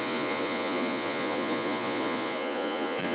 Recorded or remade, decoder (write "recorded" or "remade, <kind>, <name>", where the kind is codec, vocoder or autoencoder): remade, vocoder, Vocos